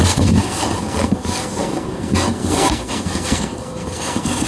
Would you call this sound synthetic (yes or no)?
yes